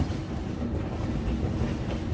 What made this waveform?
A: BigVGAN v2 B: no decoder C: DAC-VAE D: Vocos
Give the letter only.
B